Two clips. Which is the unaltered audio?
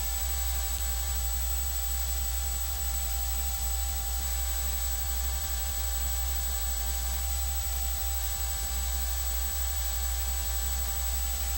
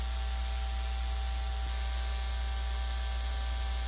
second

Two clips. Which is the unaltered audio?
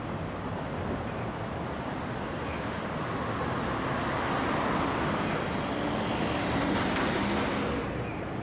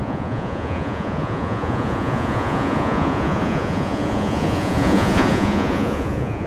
first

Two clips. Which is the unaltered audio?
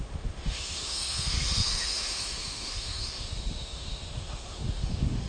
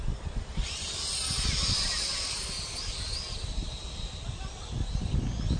second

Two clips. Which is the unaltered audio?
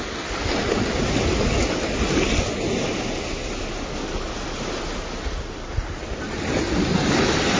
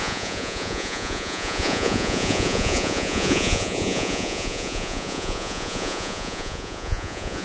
first